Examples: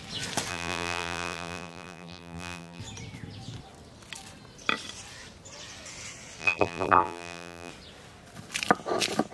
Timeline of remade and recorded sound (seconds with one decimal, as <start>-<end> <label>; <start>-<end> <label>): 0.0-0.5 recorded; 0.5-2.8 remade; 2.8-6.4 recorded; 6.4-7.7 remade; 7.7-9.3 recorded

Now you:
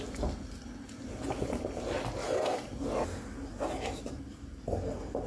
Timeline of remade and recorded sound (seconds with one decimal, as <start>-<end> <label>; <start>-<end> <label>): 0.0-5.3 recorded

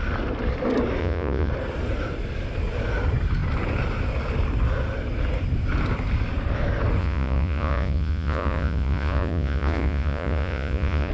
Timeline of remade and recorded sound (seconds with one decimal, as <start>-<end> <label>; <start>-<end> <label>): 0.0-1.0 recorded; 1.0-1.5 remade; 1.5-7.0 recorded; 7.0-11.1 remade

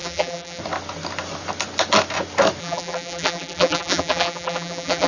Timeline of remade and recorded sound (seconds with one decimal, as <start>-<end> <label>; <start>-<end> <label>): 0.0-0.6 remade; 0.6-2.6 recorded; 2.6-5.1 remade

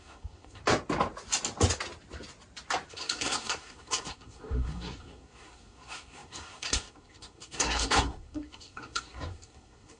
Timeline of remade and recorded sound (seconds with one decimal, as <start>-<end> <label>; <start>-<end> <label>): 0.0-0.6 remade; 0.6-2.9 recorded; 2.9-10.0 remade

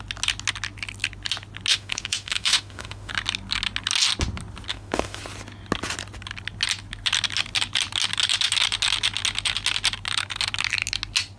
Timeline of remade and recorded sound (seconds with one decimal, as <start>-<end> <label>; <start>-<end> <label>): 0.0-1.7 recorded; 1.7-3.1 remade; 3.1-4.7 recorded; 4.7-5.2 remade; 5.2-11.4 recorded

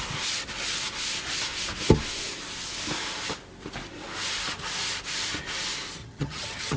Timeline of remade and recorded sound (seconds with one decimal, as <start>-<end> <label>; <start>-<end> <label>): 0.0-6.0 recorded; 6.0-6.8 remade

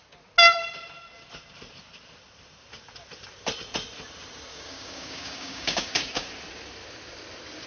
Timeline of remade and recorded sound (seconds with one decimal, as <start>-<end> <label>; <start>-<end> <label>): 0.0-4.5 recorded; 4.5-6.3 remade; 6.3-7.7 recorded